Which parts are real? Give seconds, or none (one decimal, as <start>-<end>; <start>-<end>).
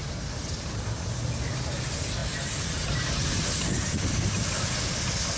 0.0-5.4